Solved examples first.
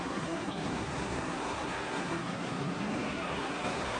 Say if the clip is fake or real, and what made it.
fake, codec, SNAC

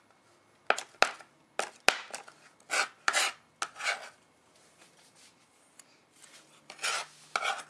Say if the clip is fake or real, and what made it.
real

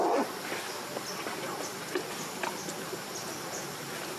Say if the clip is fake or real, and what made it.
real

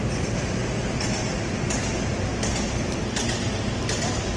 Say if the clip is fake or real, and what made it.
real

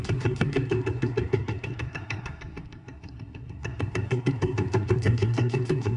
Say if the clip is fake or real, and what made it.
fake, codec, SNAC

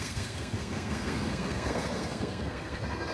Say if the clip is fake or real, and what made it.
fake, codec, SNAC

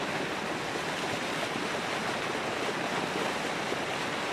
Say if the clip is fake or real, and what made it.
real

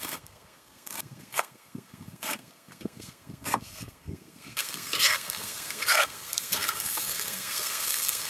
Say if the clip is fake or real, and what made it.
fake, codec, SNAC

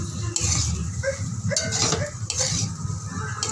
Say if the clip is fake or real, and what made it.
real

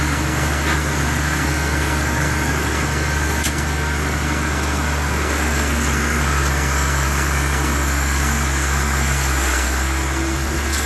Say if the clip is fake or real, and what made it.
fake, codec, SNAC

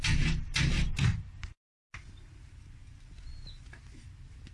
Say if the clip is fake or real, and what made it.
real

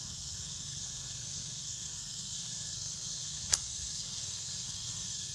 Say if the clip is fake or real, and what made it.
fake, codec, SNAC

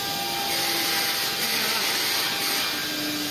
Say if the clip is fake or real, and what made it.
real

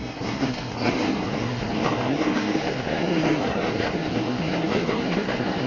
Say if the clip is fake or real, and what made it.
fake, codec, SNAC